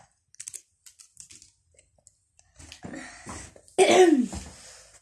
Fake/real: real